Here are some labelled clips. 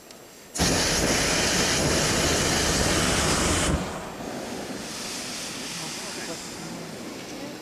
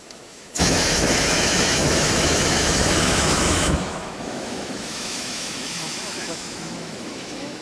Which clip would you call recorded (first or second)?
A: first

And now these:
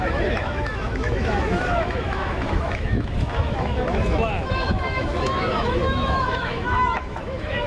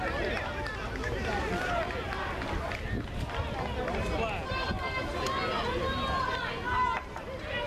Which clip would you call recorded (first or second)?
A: second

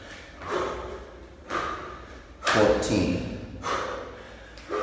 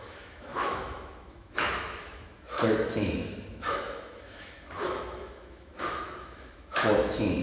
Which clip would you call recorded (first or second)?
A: first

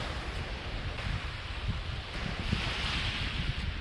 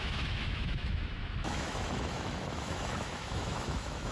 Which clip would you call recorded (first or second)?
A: first